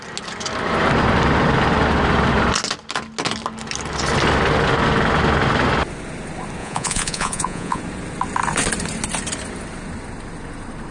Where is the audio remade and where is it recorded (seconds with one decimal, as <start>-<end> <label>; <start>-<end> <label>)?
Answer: 0.0-6.6 recorded; 6.6-7.8 remade; 7.8-10.9 recorded